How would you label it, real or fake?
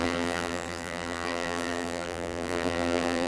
fake